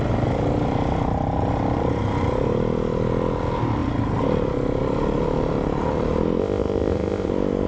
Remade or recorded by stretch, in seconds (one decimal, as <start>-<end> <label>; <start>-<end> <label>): 0.0-6.4 recorded; 6.4-7.3 remade; 7.3-7.7 recorded